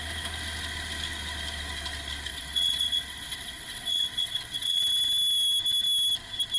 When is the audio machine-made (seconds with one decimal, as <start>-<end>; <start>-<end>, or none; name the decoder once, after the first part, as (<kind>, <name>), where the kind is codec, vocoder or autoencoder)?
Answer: 2.3-4.8 (vocoder, WaveNeXt)